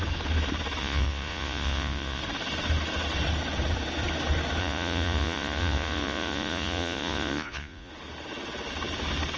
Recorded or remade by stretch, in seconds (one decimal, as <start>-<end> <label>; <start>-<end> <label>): 0.0-0.8 recorded; 0.8-2.2 remade; 2.2-4.6 recorded; 4.6-7.9 remade; 7.9-9.4 recorded